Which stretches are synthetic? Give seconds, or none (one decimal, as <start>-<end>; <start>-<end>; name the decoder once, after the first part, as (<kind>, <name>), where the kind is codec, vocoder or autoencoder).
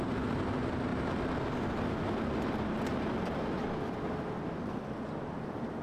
0.0-0.9 (vocoder, BigVGAN v2); 1.5-2.9; 4.6-5.8